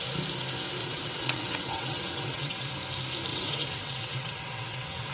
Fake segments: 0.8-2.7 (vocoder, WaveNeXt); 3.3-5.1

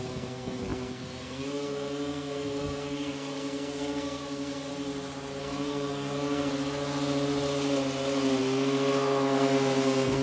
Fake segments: 0.0-4.7 (codec, SNAC); 5.4-6.5; 8.4-10.2

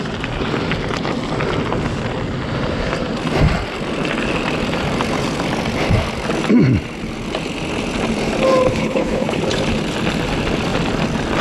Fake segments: 8.7-9.4 (codec, HILCodec)

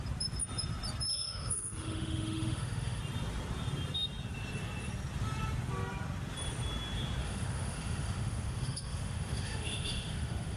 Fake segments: 1.1-3.0 (autoencoder, DAC-VAE); 7.2-10.6

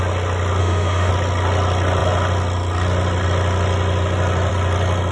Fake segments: 0.6-1.1 (autoencoder, DAC-VAE)

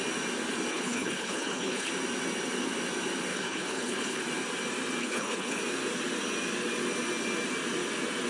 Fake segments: 0.7-1.9 (codec, HILCodec); 3.3-4.2; 5.0-5.6